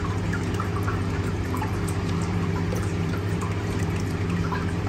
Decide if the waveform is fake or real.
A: fake